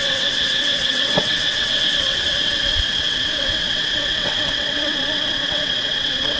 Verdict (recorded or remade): remade